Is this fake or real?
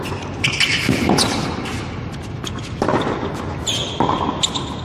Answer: real